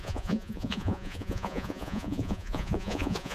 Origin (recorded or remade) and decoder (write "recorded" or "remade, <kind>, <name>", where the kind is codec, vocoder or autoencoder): remade, vocoder, Vocos